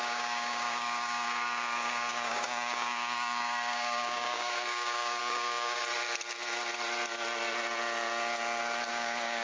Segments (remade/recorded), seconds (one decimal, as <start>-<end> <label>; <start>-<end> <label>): 0.0-5.8 remade; 5.8-8.9 recorded; 8.9-9.4 remade